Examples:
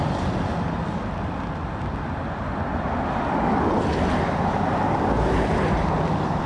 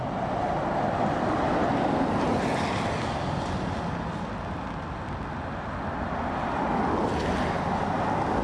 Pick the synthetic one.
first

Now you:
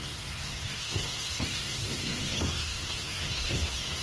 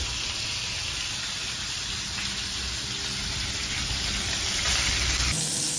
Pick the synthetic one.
first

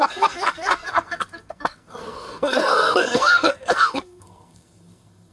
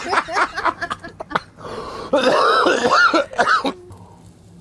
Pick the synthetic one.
first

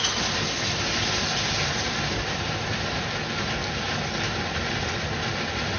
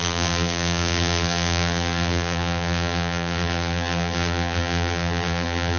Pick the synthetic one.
second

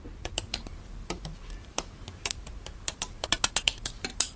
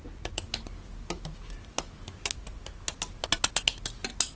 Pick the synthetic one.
first